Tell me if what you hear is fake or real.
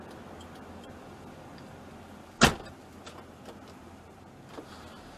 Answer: real